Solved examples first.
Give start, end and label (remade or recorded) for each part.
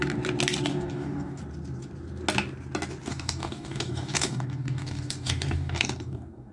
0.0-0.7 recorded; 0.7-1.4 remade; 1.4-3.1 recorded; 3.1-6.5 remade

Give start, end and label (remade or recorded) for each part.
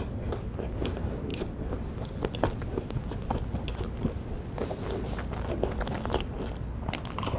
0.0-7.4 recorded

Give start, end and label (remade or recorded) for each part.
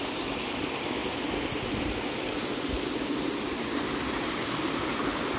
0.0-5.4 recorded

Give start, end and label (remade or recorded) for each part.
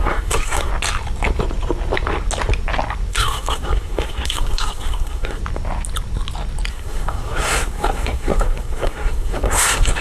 0.0-0.7 remade; 0.7-3.1 recorded; 3.1-5.4 remade; 5.4-6.7 recorded; 6.7-10.0 remade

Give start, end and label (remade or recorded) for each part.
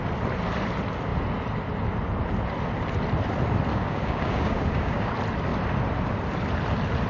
0.0-3.7 recorded; 3.7-5.1 remade; 5.1-7.1 recorded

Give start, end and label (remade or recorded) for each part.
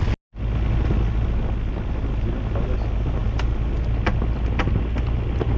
0.0-5.6 recorded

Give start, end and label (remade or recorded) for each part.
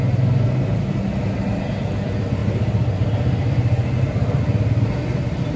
0.0-5.6 recorded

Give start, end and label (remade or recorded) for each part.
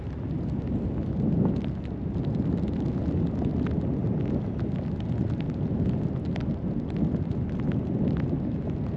0.0-9.0 recorded